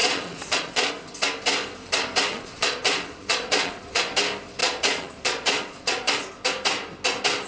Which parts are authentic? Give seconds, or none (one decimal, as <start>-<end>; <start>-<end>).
0.9-2.3; 4.1-4.6; 6.1-7.5